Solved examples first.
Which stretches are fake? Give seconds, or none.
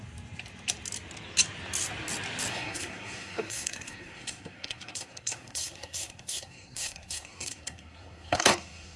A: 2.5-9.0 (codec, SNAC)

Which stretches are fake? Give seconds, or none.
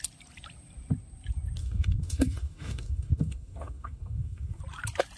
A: 1.6-4.6 (codec, DAC)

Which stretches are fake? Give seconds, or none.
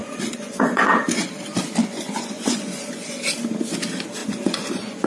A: 0.0-0.9 (vocoder, Vocos); 1.8-3.2; 4.2-5.1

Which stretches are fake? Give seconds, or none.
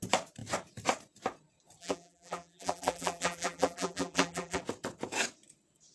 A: 1.8-4.6 (vocoder, BigVGAN v2)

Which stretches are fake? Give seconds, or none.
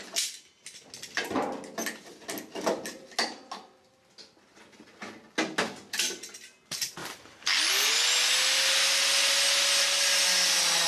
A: 7.0-7.9 (vocoder, BigVGAN v2)